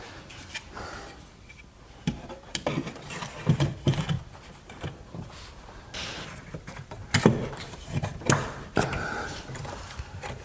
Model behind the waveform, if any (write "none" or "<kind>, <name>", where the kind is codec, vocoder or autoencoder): vocoder, BigVGAN v2